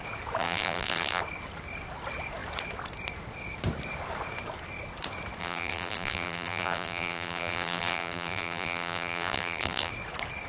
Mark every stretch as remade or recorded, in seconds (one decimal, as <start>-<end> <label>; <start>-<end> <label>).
0.0-0.4 recorded; 0.4-1.2 remade; 1.2-5.4 recorded; 5.4-9.9 remade; 9.9-10.5 recorded